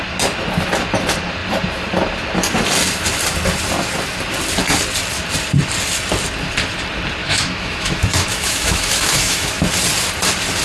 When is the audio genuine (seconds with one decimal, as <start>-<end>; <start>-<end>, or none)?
0.0-7.2; 9.6-10.6